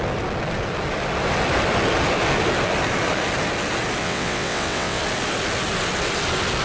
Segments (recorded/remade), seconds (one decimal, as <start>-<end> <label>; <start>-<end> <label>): 0.0-4.0 recorded; 4.0-5.0 remade; 5.0-6.6 recorded